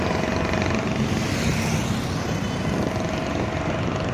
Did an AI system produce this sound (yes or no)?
no